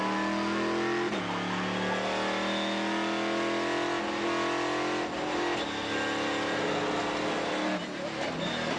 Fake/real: real